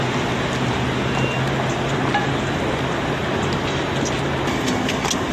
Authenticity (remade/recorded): recorded